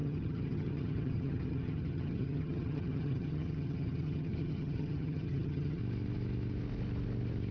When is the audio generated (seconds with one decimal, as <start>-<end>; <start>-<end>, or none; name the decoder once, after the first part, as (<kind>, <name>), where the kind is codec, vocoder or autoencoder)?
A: 0.0-5.8 (vocoder, HiFi-GAN)